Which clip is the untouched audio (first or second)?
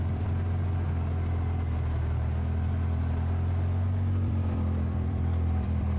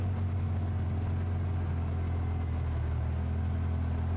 second